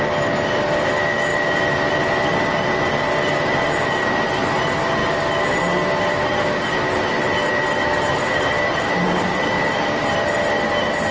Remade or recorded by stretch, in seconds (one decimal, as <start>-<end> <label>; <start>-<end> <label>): 0.0-11.1 remade

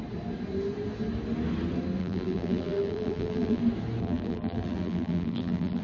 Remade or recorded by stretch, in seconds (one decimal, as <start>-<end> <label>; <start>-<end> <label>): 0.0-2.0 recorded; 2.0-3.6 remade; 3.6-4.0 recorded; 4.0-5.8 remade

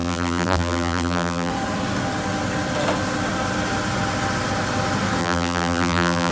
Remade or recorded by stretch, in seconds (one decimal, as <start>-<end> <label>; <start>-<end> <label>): 0.0-1.5 remade; 1.5-5.2 recorded; 5.2-6.3 remade

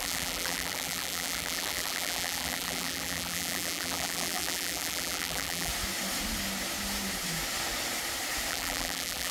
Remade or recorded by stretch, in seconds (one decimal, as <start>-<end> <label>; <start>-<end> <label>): 0.0-5.7 remade; 5.7-8.5 recorded; 8.5-9.3 remade

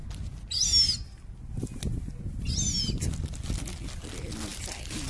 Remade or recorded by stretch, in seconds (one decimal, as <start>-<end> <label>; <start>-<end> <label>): 0.0-4.5 recorded; 4.5-5.1 remade

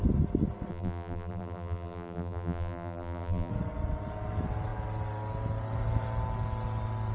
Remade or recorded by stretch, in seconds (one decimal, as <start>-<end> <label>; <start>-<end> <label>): 0.0-0.7 recorded; 0.7-3.5 remade; 3.5-7.1 recorded

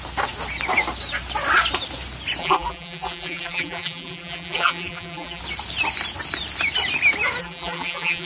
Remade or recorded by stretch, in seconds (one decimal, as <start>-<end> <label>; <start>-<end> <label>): 0.0-2.4 recorded; 2.4-5.4 remade; 5.4-7.4 recorded; 7.4-8.3 remade

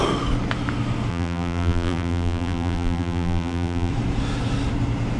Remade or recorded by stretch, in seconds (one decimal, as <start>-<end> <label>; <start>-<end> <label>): 0.0-1.1 recorded; 1.1-3.9 remade; 3.9-5.2 recorded